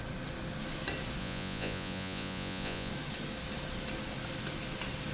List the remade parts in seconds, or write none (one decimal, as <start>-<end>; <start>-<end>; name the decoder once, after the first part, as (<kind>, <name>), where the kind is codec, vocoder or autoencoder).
1.2-2.9 (vocoder, Vocos)

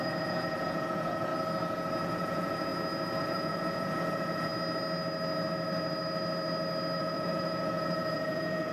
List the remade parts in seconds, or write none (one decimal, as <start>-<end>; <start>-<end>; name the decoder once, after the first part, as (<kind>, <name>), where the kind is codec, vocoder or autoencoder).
0.0-1.3 (vocoder, Vocos); 2.1-2.7; 3.2-4.5; 7.0-8.7